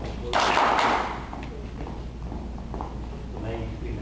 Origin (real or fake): real